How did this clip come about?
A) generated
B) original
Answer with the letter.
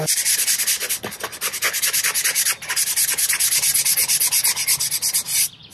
B